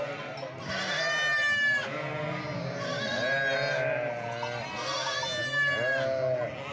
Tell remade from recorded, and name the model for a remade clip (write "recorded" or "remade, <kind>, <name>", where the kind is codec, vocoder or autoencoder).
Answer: recorded